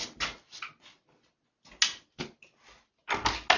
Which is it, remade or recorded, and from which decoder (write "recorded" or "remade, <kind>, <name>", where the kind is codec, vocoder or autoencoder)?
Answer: recorded